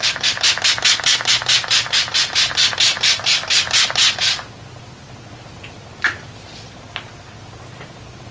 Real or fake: real